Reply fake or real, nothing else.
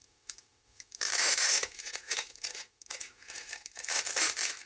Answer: fake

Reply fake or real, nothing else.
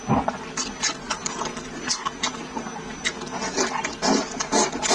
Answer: real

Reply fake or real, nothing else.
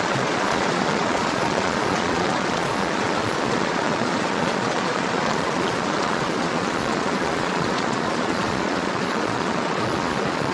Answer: fake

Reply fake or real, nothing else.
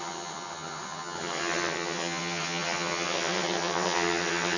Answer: fake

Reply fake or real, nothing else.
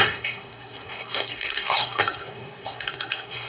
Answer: fake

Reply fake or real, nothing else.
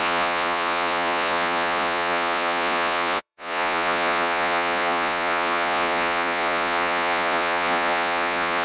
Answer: fake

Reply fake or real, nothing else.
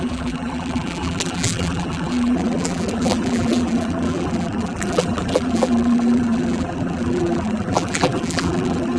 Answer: fake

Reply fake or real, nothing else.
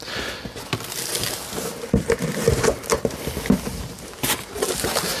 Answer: real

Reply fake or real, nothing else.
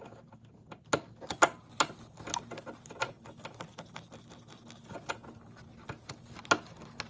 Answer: real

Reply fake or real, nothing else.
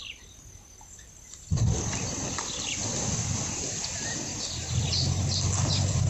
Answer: real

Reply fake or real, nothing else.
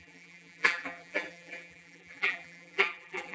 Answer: fake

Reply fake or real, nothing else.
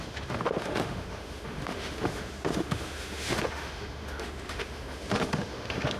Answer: fake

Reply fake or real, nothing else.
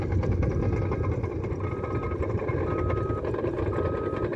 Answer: real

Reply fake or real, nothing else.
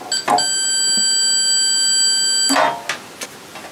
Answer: real